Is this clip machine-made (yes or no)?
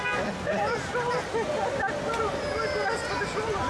no